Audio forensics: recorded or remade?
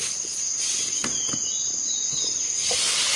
recorded